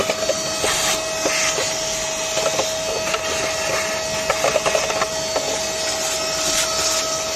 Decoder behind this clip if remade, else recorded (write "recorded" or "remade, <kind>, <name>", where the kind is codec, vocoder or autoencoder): recorded